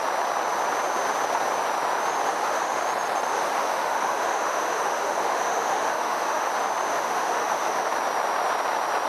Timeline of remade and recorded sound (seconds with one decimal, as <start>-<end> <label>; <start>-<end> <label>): 0.0-2.3 recorded; 2.3-2.8 remade; 2.8-3.3 recorded; 3.3-6.5 remade; 6.5-6.9 recorded; 6.9-7.9 remade; 7.9-9.1 recorded